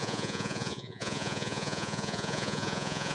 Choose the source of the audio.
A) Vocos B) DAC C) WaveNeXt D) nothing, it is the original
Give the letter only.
A